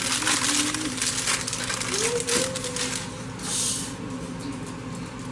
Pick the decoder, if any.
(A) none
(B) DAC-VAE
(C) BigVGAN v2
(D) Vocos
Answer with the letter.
A